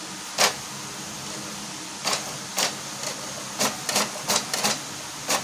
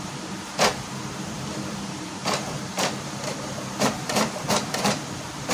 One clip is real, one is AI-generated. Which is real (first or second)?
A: first